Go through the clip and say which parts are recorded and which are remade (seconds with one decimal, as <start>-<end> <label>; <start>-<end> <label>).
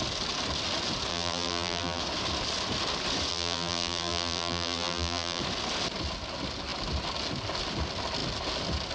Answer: 0.0-1.1 recorded; 1.1-2.0 remade; 2.0-3.3 recorded; 3.3-5.4 remade; 5.4-8.9 recorded